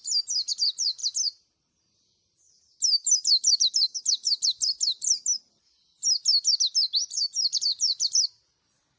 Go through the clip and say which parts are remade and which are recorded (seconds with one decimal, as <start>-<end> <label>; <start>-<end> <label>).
0.0-9.0 recorded